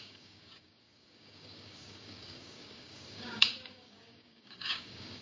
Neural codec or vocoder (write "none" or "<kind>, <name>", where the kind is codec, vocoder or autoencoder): codec, DAC